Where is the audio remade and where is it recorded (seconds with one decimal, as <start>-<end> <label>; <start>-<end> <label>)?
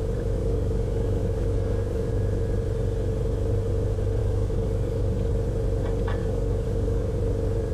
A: 0.0-0.4 recorded; 0.4-2.1 remade; 2.1-4.2 recorded; 4.2-5.3 remade; 5.3-6.2 recorded; 6.2-7.1 remade; 7.1-7.7 recorded